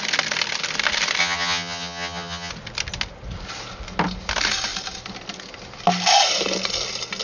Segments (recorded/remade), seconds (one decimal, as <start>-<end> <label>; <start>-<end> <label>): 0.0-1.2 recorded; 1.2-2.5 remade; 2.5-7.2 recorded